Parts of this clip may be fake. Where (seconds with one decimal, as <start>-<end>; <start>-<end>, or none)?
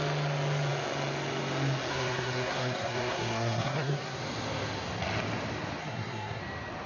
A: 1.9-4.2; 5.8-6.4